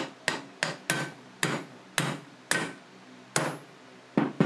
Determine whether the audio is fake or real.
real